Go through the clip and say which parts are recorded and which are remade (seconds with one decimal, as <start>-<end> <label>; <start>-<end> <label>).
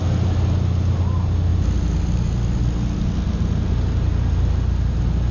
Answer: 0.0-5.3 recorded